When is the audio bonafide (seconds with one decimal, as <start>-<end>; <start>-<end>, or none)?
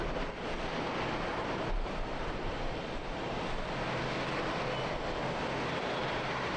0.0-1.3; 2.8-6.0